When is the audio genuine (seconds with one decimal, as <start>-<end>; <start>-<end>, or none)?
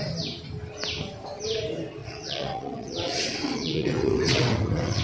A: 0.0-2.0